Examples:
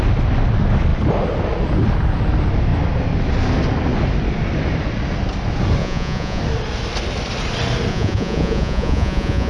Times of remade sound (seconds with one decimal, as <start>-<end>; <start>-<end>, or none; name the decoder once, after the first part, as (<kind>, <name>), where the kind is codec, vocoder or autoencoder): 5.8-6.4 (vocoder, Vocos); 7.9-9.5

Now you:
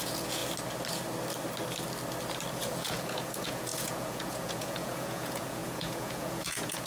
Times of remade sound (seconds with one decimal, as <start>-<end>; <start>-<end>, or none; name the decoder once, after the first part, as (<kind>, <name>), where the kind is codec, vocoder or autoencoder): 0.0-0.4 (vocoder, Vocos); 2.5-6.9

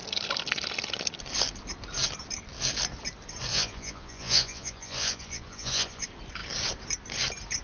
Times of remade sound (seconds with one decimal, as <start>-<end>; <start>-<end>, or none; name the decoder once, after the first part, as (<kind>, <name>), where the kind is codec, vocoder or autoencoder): 3.5-6.0 (vocoder, Vocos)

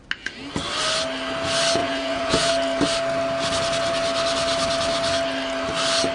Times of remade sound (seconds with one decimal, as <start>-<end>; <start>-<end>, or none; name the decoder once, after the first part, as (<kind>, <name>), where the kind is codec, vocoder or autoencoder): 1.8-2.5 (vocoder, Vocos)